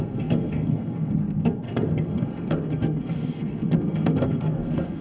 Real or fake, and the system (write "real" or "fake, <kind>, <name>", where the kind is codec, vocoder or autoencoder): fake, codec, SNAC